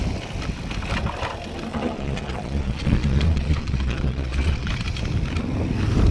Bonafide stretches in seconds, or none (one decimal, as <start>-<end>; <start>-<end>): 0.0-1.7; 4.7-6.1